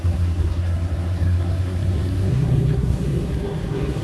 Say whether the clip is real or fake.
fake